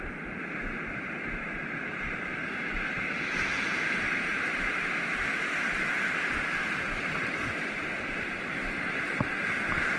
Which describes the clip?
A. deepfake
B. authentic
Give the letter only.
A